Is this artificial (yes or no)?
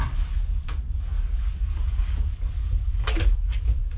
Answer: yes